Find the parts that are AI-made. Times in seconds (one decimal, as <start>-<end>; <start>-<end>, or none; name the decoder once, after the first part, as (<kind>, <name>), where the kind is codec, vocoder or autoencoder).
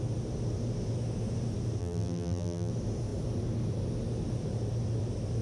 1.8-2.7 (vocoder, BigVGAN v2)